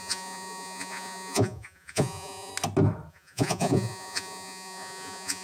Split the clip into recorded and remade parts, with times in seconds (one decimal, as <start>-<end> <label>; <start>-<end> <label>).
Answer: 0.0-2.5 remade; 2.5-3.1 recorded; 3.1-5.4 remade